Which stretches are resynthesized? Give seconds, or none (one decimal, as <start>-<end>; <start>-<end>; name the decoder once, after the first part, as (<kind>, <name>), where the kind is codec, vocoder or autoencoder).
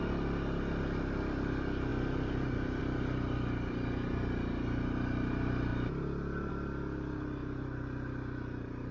none